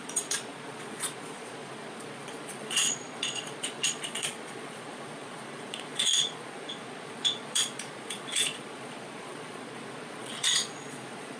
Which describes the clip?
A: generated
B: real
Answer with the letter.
A